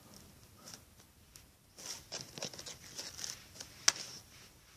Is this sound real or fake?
real